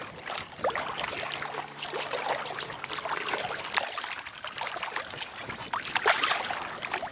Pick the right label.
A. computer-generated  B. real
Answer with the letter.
B